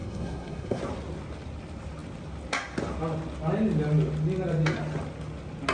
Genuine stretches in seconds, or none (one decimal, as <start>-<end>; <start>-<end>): 0.8-5.7